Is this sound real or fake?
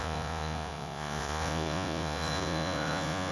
fake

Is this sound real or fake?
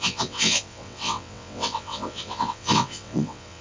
fake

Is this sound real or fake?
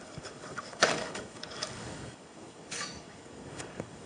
fake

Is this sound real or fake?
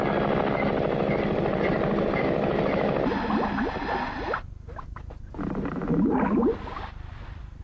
real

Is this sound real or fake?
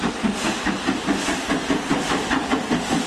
real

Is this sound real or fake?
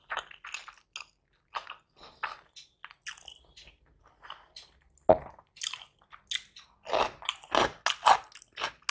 real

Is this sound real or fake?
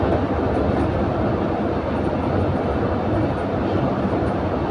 real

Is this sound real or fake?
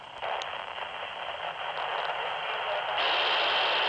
real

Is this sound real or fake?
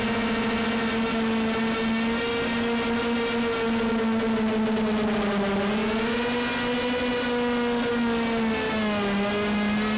real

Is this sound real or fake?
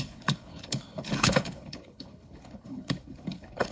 fake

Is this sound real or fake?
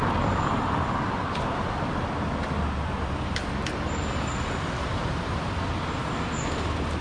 real